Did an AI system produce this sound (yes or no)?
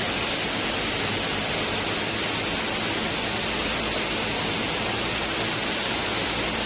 no